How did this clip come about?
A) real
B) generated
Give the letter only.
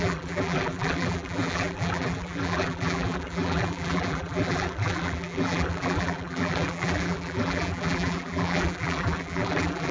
B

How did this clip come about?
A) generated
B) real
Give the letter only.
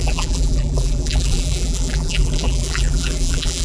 A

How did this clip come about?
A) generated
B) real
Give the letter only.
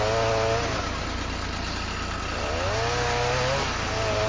B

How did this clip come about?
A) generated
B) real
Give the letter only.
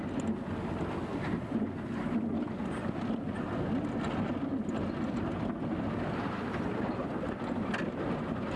B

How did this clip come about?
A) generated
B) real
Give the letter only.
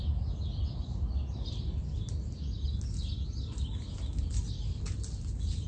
B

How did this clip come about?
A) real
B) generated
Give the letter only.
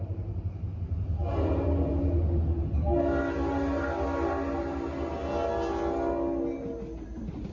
A